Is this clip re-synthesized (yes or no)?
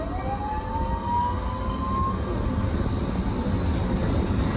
no